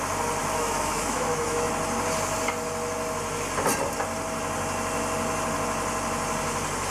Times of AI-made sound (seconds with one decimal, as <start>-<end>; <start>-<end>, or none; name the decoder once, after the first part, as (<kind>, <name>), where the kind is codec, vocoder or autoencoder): 0.4-1.7 (autoencoder, DAC-VAE)